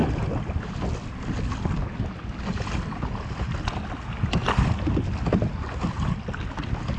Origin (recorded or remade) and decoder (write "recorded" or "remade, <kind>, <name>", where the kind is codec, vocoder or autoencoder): recorded